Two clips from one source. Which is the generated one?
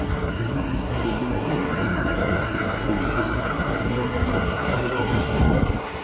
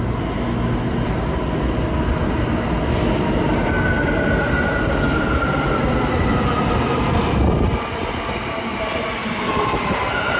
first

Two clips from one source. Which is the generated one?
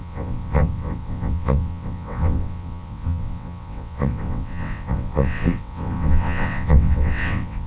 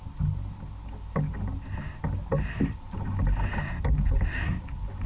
first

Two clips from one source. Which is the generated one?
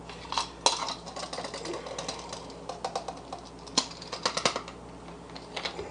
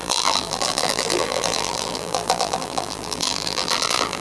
second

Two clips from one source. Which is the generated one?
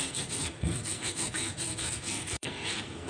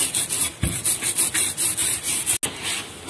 first